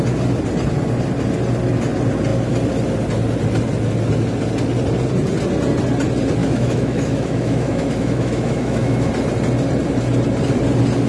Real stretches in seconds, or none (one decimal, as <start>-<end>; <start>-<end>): 0.0-6.4; 9.1-11.1